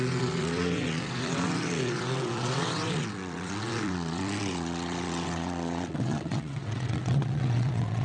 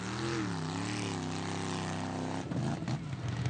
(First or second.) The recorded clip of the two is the second